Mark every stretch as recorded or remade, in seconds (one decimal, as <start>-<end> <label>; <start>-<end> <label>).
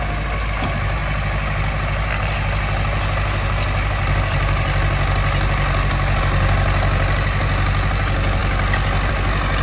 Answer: 0.0-9.6 recorded